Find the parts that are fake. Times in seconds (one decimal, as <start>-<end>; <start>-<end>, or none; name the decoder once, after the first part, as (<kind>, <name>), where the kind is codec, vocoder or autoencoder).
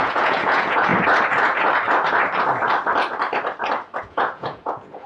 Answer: 0.0-0.9 (vocoder, Vocos); 4.0-5.1